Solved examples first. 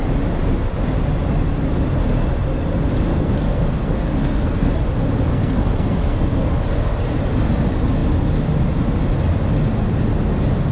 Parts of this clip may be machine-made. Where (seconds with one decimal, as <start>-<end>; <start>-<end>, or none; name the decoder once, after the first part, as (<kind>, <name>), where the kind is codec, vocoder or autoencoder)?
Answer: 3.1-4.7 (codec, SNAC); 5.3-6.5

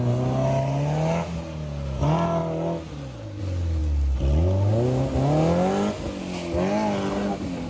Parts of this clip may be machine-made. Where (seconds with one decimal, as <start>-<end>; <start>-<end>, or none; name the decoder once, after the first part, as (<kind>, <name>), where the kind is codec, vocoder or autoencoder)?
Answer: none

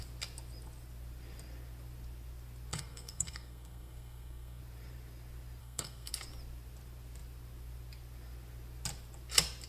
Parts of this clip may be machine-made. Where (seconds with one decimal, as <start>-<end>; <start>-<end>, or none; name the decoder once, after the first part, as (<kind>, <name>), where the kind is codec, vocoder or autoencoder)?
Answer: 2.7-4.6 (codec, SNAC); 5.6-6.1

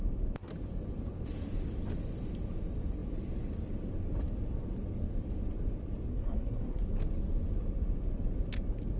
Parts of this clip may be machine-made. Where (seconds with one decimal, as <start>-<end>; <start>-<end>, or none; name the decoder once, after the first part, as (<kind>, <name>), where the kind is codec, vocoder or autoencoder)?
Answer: 6.1-6.8 (codec, SNAC)